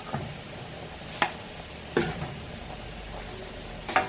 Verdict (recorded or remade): recorded